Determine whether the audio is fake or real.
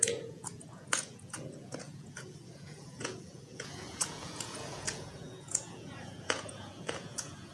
fake